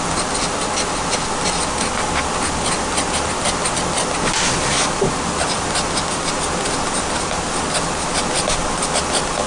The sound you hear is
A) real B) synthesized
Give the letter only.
A